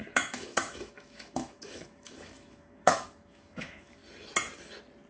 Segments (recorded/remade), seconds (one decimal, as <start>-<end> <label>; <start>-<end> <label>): 0.0-4.0 remade; 4.0-5.1 recorded